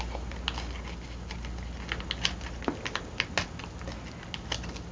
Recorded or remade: recorded